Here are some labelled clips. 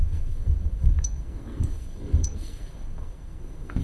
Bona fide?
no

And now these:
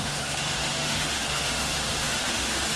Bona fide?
no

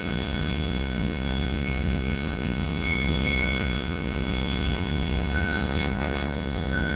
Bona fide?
no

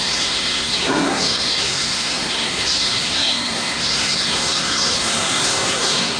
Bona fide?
no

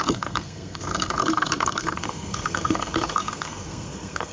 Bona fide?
no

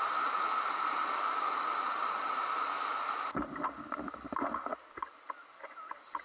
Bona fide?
yes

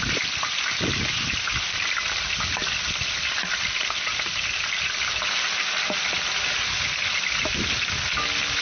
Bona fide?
yes